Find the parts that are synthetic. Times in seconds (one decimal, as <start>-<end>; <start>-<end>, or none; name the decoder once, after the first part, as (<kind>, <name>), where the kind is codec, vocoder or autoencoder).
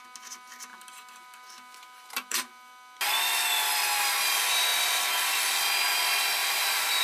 0.7-2.5 (vocoder, BigVGAN v2); 6.4-7.0